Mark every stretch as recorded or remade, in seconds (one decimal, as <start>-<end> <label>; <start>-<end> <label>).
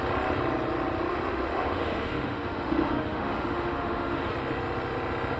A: 0.0-1.1 recorded; 1.1-4.3 remade; 4.3-5.4 recorded